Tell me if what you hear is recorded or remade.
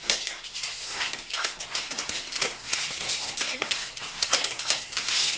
remade